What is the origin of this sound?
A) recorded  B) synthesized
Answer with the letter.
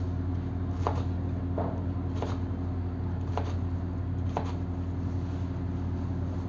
A